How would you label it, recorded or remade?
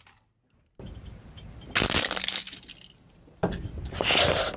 recorded